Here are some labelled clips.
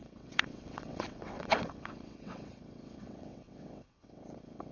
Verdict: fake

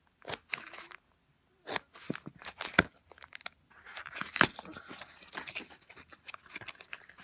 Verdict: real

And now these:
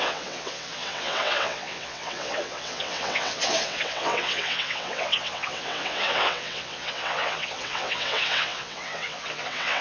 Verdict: fake